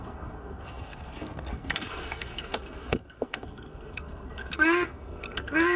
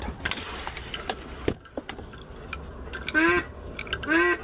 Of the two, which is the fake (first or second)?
first